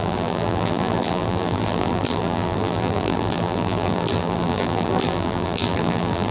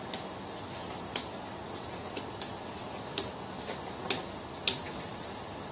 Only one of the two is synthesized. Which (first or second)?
first